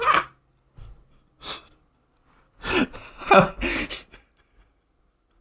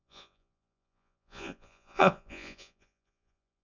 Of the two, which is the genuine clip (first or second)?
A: first